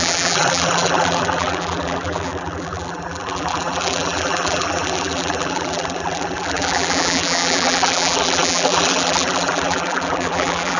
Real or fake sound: fake